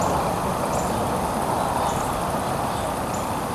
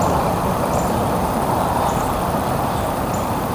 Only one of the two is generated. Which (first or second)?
second